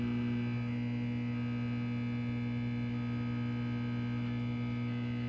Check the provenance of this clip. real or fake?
real